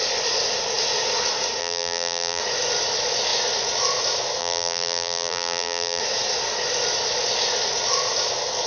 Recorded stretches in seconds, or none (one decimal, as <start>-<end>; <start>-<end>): 0.0-1.6; 2.4-4.4; 6.0-8.7